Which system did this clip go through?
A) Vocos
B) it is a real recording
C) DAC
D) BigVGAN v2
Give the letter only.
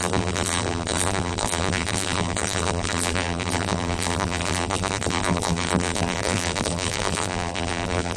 D